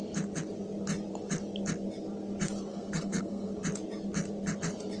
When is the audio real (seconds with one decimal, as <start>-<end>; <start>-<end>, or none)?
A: 0.0-2.7; 3.5-5.0